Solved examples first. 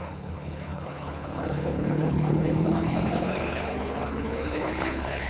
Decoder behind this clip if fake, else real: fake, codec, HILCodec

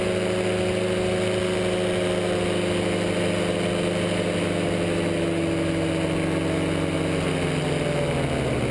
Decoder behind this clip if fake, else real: real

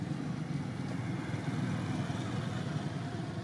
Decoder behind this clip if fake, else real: real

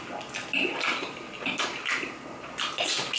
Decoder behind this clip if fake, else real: real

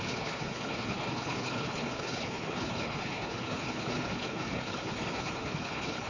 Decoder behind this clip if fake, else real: fake, codec, HILCodec